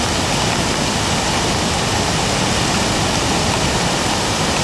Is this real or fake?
real